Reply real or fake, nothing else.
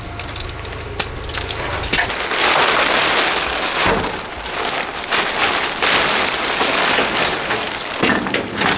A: real